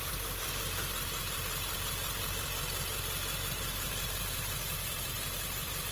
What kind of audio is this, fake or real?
fake